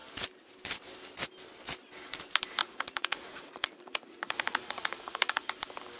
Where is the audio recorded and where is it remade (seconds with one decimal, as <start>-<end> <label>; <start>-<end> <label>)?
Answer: 0.0-2.6 recorded; 2.6-5.5 remade; 5.5-6.0 recorded